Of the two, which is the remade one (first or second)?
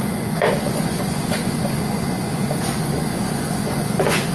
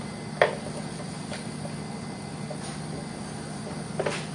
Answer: first